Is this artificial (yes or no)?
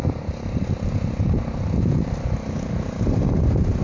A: yes